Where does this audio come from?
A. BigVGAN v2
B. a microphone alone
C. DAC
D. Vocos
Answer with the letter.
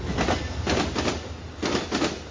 B